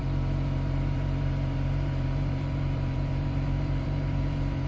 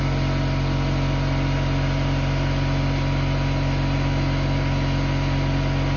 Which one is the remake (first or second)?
first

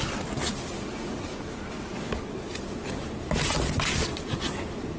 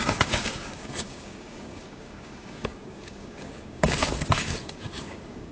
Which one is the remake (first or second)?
second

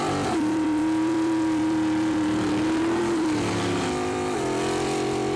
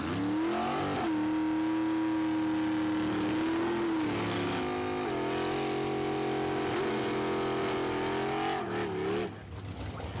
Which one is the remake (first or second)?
first